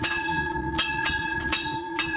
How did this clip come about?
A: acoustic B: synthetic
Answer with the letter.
B